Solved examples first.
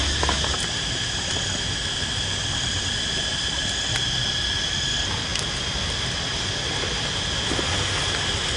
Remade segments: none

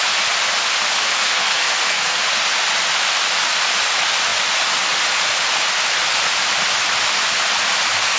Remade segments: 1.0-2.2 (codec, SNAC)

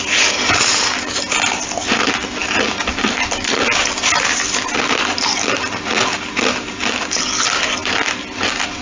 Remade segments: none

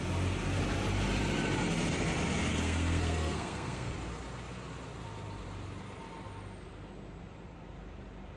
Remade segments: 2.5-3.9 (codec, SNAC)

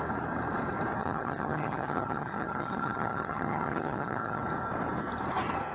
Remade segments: 1.0-4.4 (vocoder, HiFi-GAN)

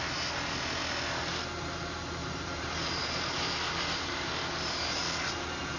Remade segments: 2.2-5.0 (vocoder, BigVGAN v2)

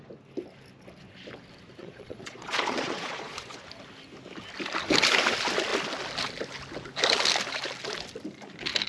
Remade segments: 1.8-3.6 (vocoder, Vocos)

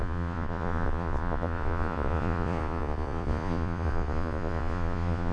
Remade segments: 0.0-5.3 (vocoder, Vocos)